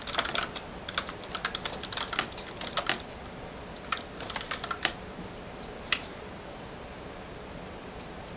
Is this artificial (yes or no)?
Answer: no